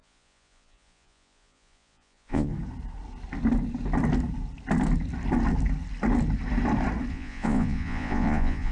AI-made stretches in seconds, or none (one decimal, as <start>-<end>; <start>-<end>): 0.0-2.5; 7.1-8.7